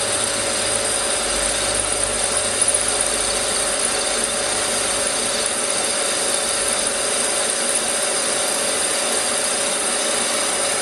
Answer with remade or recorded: recorded